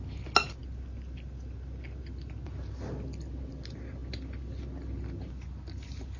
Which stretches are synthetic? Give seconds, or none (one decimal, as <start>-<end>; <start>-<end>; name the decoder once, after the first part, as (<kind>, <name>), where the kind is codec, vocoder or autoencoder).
none